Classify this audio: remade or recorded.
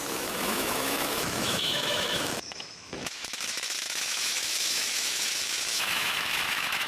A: remade